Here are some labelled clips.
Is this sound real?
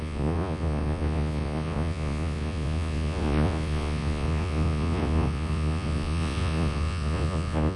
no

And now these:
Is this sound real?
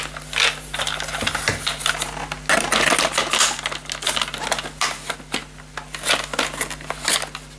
yes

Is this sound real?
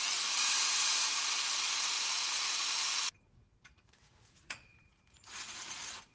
no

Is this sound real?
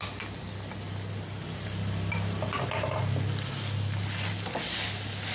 yes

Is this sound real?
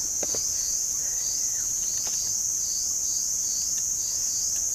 yes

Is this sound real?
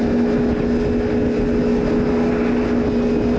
yes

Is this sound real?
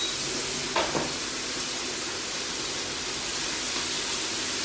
yes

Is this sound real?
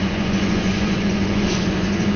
no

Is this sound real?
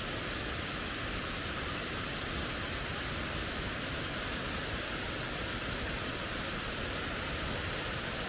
yes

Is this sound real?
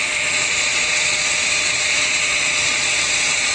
no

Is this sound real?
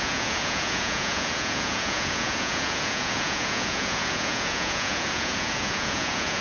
no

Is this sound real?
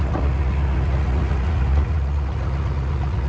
no